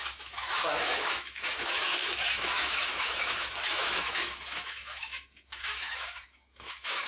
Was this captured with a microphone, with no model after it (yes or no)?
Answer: no